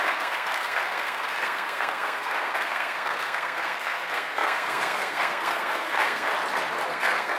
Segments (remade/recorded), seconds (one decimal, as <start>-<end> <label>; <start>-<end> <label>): 0.0-6.3 remade; 6.3-6.9 recorded; 6.9-7.4 remade